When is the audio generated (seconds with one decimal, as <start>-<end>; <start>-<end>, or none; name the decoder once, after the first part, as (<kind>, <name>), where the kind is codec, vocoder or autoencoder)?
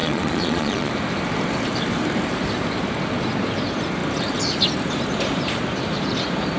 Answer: 0.0-0.9 (vocoder, Vocos)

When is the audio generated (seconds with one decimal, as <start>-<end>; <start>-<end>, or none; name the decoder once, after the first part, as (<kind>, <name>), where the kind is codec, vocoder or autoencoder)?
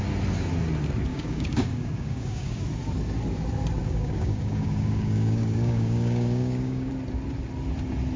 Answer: 1.1-2.6 (codec, DAC); 3.8-6.9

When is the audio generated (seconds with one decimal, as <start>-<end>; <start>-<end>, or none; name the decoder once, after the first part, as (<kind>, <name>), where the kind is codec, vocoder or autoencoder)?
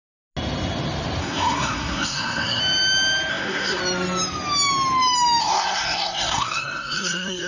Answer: 1.2-2.6 (codec, SNAC); 3.3-3.8; 5.4-7.5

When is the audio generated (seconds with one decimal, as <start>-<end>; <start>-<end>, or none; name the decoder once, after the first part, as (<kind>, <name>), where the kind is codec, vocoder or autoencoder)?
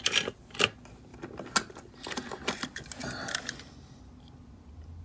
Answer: none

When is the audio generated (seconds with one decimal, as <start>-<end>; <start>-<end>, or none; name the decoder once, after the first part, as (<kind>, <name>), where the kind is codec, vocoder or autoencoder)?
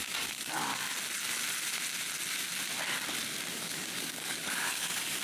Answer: 0.0-0.7 (codec, DAC); 3.5-5.2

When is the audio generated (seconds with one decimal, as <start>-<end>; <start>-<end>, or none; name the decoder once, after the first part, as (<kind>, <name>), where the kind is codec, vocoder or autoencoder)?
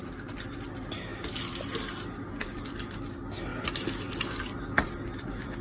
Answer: none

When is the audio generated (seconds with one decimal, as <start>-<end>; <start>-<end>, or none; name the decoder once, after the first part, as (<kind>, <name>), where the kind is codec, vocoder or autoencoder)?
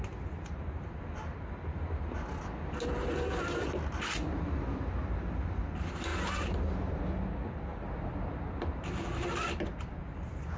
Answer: none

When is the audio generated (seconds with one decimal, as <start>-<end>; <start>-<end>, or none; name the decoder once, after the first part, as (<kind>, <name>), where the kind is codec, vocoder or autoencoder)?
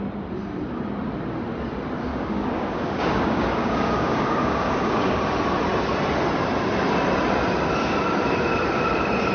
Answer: 2.1-5.2 (codec, DAC)